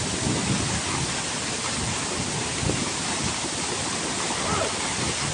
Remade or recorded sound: recorded